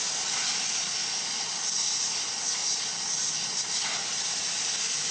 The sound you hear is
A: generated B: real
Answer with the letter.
B